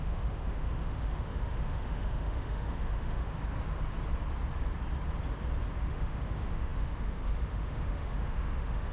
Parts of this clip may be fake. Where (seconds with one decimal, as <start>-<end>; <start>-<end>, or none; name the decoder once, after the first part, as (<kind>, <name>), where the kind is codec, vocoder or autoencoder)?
0.0-3.4 (autoencoder, DAC-VAE); 5.8-8.9

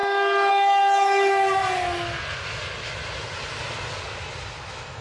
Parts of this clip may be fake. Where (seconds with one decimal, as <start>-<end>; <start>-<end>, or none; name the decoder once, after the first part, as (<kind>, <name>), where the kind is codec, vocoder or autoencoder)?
0.5-1.6 (autoencoder, DAC-VAE); 4.6-5.0

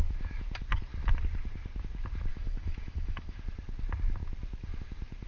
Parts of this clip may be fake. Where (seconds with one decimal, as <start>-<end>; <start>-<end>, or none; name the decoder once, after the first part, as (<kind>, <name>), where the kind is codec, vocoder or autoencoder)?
2.3-3.4 (autoencoder, DAC-VAE)